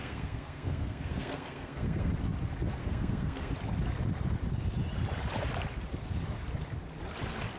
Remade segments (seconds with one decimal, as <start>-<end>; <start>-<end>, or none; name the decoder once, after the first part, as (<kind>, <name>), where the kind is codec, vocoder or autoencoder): 0.0-2.1 (codec, SNAC); 2.8-3.5